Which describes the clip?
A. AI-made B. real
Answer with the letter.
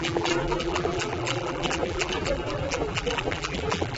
A